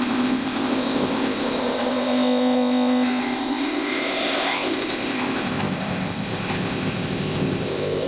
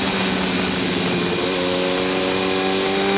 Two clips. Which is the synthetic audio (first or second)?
first